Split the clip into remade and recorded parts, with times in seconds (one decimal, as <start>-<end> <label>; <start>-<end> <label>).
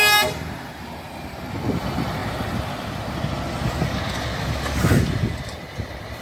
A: 0.0-6.2 recorded